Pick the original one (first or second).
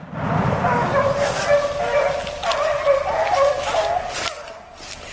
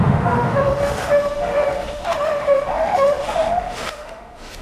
first